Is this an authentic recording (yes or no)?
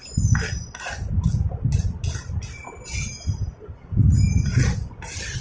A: yes